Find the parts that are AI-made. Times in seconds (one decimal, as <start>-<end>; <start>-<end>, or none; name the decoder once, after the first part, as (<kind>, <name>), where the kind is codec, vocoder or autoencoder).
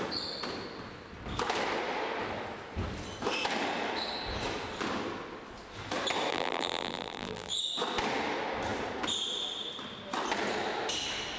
6.3-7.5 (vocoder, BigVGAN v2)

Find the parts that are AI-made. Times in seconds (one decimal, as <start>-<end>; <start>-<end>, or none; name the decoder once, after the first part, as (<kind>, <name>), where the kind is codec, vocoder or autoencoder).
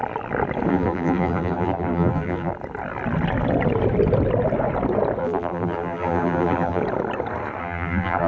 0.7-2.5 (vocoder, BigVGAN v2); 5.2-6.8; 7.6-8.3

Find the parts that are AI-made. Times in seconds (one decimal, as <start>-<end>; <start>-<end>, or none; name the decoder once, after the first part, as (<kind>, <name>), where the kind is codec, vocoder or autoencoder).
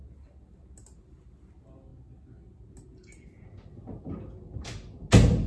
none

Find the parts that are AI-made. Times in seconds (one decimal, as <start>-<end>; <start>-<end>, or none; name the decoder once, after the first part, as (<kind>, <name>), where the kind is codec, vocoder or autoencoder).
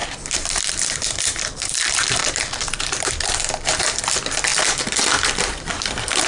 0.0-1.8 (vocoder, BigVGAN v2); 2.2-3.1; 4.5-6.3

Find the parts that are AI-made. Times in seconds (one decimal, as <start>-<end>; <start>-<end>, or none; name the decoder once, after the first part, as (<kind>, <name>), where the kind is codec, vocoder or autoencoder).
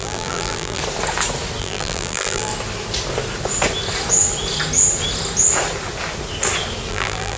0.0-0.8 (vocoder, BigVGAN v2); 1.6-2.5; 6.9-7.4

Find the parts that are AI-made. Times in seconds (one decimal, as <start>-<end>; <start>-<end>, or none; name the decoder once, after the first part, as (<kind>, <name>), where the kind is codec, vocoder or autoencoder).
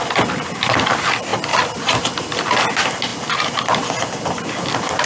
1.3-2.0 (vocoder, BigVGAN v2)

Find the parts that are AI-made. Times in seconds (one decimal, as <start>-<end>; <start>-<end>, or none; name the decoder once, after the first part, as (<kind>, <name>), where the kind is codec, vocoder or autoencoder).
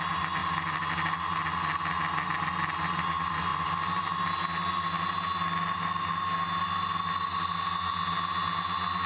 0.4-1.4 (vocoder, BigVGAN v2); 3.5-4.2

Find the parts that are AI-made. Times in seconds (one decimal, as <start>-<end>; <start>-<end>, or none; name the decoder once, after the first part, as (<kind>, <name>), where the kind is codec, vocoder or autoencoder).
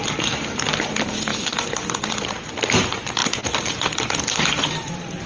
1.3-2.2 (vocoder, BigVGAN v2); 3.2-4.3